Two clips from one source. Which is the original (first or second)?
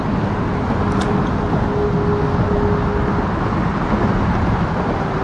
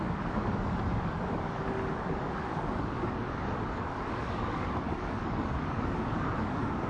first